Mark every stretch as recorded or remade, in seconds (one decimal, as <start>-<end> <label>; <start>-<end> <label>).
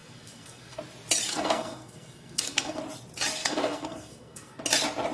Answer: 0.0-0.8 remade; 0.8-1.3 recorded; 1.3-2.8 remade; 2.8-3.4 recorded; 3.4-4.6 remade; 4.6-5.1 recorded